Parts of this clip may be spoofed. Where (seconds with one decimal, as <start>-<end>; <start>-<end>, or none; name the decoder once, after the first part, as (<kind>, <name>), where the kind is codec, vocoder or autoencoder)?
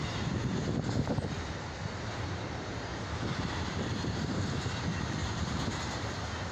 2.9-4.5 (vocoder, BigVGAN v2); 5.2-5.8